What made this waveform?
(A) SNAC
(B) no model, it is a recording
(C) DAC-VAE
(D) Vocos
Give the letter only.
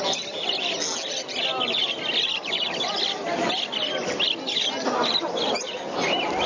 B